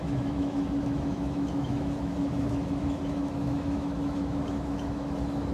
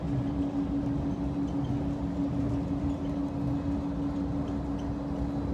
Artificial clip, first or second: first